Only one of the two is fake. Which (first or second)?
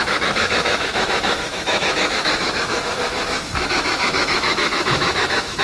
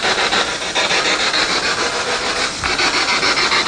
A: first